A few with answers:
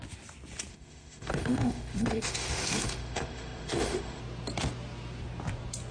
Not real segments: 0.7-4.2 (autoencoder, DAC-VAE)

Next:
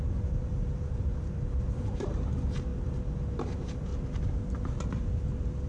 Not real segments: 0.0-3.9 (vocoder, BigVGAN v2)

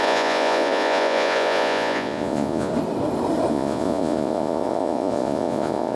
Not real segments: 0.0-2.7 (vocoder, Vocos); 3.5-6.0

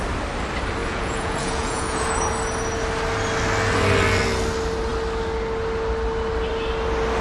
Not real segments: 0.8-2.1 (vocoder, Vocos)

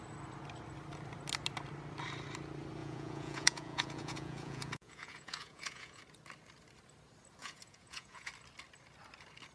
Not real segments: 2.8-6.0 (vocoder, Vocos); 7.4-8.3

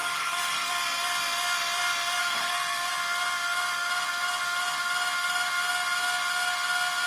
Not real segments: 0.0-0.7 (codec, SNAC); 2.2-2.9

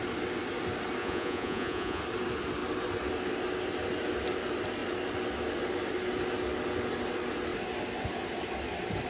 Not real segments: 1.0-2.0 (vocoder, Vocos)